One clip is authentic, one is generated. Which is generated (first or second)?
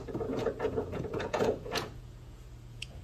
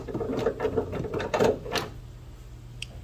first